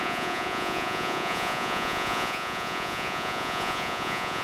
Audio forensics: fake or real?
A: fake